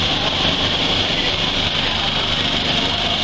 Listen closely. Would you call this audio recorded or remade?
remade